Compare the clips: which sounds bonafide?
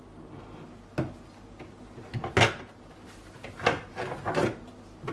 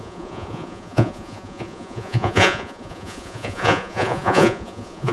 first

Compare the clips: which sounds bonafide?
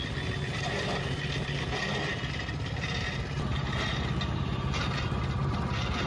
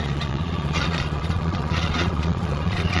first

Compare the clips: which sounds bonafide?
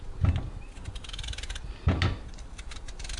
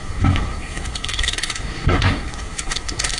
first